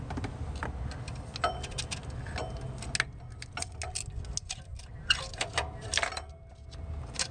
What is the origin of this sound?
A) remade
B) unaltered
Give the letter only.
B